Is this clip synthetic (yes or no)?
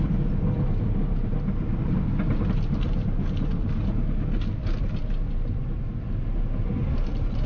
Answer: no